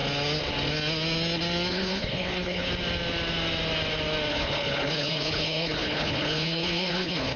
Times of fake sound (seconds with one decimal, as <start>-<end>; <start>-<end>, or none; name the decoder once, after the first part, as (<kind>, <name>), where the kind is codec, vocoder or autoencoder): 1.7-2.7 (codec, HILCodec); 4.3-7.4